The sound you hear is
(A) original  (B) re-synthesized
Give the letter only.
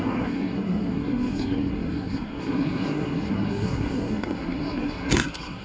B